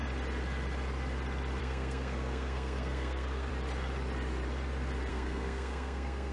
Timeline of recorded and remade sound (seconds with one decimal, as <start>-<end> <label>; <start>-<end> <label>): 0.0-1.6 recorded; 1.6-3.5 remade; 3.5-5.1 recorded; 5.1-6.3 remade